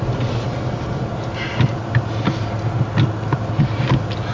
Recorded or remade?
recorded